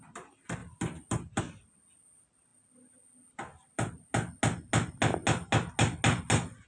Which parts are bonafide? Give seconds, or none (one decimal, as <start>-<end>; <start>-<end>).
0.0-6.7